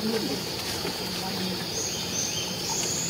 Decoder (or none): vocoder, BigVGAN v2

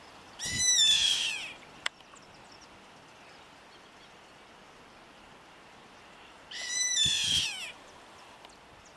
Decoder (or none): vocoder, BigVGAN v2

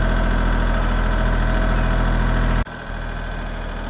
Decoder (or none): none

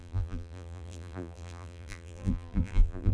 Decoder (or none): vocoder, BigVGAN v2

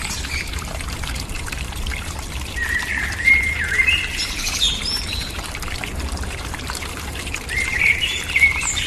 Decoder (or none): vocoder, BigVGAN v2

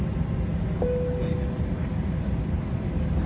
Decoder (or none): none